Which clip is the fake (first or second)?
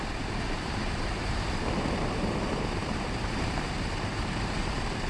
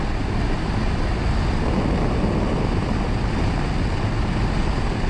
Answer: first